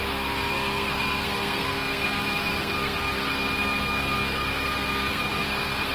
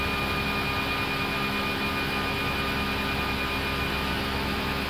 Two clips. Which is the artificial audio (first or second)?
first